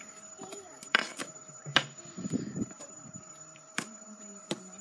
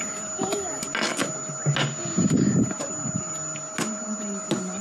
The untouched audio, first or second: second